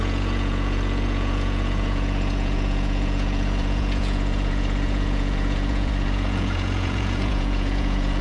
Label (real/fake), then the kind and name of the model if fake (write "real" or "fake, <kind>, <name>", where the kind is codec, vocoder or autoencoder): fake, vocoder, Vocos